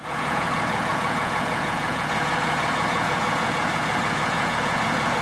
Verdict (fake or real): fake